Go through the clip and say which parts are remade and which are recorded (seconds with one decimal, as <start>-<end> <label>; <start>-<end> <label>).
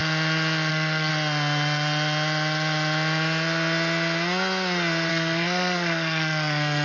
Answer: 0.0-0.7 recorded; 0.7-1.1 remade; 1.1-5.1 recorded; 5.1-6.8 remade